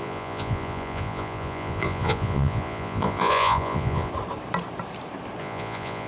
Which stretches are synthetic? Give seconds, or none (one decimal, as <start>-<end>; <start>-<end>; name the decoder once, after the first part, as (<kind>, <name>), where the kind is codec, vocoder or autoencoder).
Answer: 0.0-4.1 (vocoder, Vocos); 5.4-6.1